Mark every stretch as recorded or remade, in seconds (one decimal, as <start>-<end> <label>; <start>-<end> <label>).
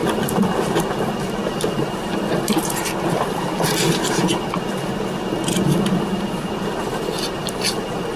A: 0.0-8.2 recorded